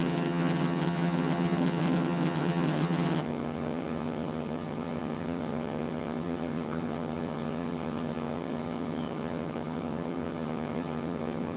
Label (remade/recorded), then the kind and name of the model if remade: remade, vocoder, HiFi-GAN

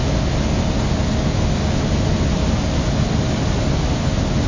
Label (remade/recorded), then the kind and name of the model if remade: recorded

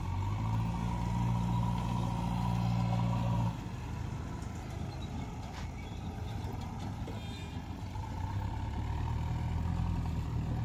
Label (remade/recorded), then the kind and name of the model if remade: recorded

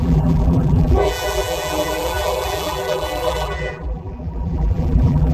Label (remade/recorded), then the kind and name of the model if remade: remade, vocoder, BigVGAN v2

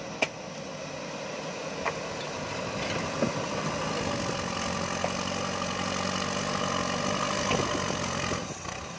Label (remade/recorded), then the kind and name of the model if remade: recorded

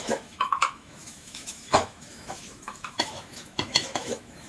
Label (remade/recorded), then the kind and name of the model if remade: remade, autoencoder, DAC-VAE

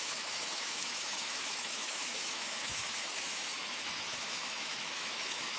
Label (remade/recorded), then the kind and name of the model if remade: remade, autoencoder, DAC-VAE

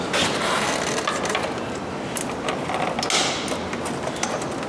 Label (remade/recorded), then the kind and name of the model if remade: recorded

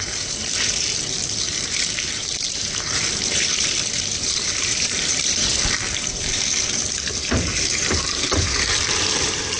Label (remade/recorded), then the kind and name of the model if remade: remade, vocoder, BigVGAN v2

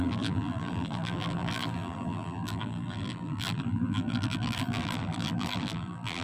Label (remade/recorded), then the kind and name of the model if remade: remade, vocoder, BigVGAN v2